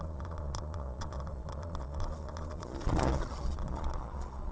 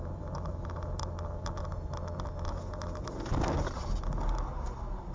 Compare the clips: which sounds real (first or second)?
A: second